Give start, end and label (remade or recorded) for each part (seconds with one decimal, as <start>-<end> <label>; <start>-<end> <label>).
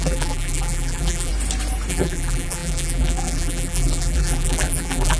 0.0-1.3 remade; 1.3-1.9 recorded; 1.9-5.2 remade